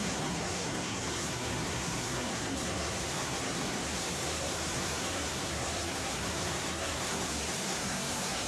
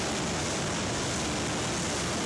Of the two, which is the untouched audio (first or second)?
second